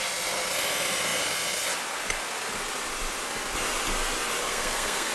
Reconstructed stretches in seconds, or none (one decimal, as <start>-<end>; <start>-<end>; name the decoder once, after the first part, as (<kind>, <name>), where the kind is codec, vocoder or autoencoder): 4.4-5.1 (codec, SNAC)